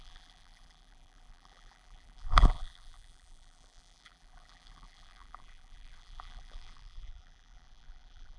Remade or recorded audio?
remade